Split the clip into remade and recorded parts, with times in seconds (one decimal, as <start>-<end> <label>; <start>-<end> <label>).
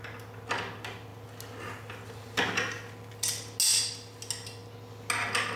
0.0-5.6 recorded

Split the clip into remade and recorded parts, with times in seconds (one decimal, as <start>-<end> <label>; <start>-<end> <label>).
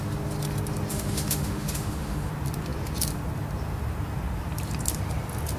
0.0-0.9 recorded; 0.9-2.3 remade; 2.3-5.6 recorded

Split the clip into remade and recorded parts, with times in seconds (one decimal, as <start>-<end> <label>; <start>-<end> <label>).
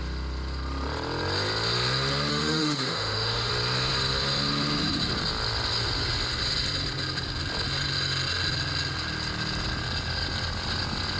0.0-2.3 recorded; 2.3-3.5 remade; 3.5-11.2 recorded